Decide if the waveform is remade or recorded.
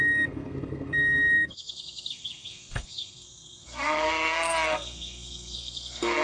remade